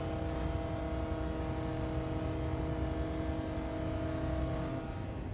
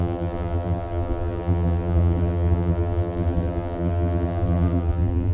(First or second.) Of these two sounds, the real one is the first